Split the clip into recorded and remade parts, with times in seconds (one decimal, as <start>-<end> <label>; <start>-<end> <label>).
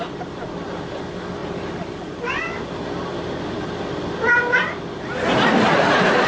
0.0-1.4 recorded; 1.4-2.2 remade; 2.2-6.3 recorded